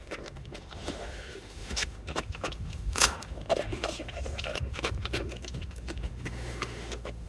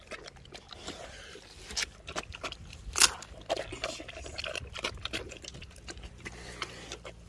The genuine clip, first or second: second